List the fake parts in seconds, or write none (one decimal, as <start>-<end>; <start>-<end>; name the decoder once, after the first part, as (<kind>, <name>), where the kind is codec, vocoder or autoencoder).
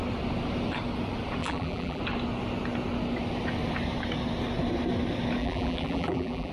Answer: 1.4-2.0 (vocoder, BigVGAN v2); 5.4-6.5